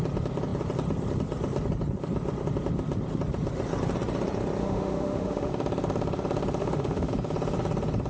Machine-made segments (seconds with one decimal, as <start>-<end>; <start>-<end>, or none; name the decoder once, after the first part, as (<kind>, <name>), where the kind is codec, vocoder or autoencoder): 4.6-5.5 (autoencoder, DAC-VAE); 6.6-7.1

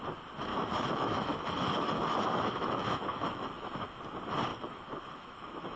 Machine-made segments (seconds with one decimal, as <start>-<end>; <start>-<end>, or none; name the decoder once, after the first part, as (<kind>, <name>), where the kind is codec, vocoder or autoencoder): 0.5-4.0 (autoencoder, DAC-VAE); 4.5-5.8